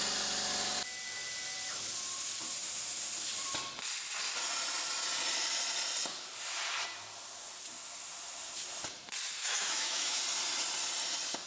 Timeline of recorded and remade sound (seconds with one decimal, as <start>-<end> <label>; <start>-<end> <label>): 0.0-9.4 recorded; 9.4-10.2 remade; 10.2-11.5 recorded

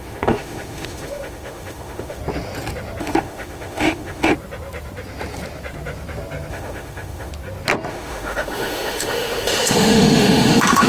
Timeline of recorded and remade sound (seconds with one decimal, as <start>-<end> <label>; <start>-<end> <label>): 0.0-2.2 remade; 2.2-3.0 recorded; 3.0-4.3 remade; 4.3-6.5 recorded; 6.5-7.3 remade; 7.3-7.9 recorded; 7.9-10.9 remade

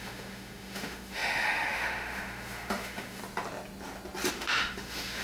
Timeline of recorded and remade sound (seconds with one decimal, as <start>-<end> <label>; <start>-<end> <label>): 0.0-3.2 remade; 3.2-4.3 recorded; 4.3-5.2 remade

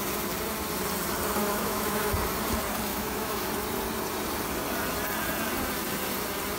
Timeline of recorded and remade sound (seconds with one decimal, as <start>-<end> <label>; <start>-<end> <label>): 0.0-1.4 recorded; 1.4-2.1 remade; 2.1-2.9 recorded; 2.9-3.5 remade; 3.5-6.6 recorded

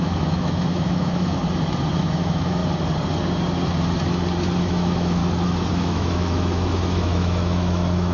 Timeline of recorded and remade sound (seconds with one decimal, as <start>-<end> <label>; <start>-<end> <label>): 0.0-1.4 remade; 1.4-2.0 recorded; 2.0-2.6 remade; 2.6-4.6 recorded; 4.6-5.2 remade; 5.2-5.7 recorded; 5.7-8.1 remade

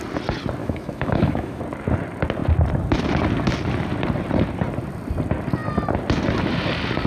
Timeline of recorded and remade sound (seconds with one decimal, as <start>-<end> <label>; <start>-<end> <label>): 0.0-0.6 recorded; 0.6-1.6 remade; 1.6-7.1 recorded